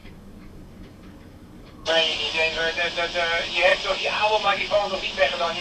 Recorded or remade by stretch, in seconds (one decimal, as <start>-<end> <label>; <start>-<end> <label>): 0.0-2.8 remade; 2.8-3.7 recorded; 3.7-5.6 remade